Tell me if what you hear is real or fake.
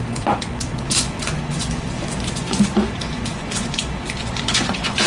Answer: fake